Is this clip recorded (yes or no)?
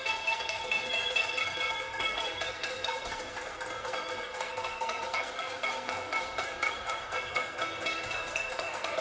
no